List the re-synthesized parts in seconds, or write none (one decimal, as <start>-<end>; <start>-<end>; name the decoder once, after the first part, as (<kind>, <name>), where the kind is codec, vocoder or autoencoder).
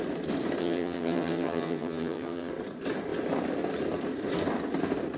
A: 0.6-2.5 (vocoder, HiFi-GAN)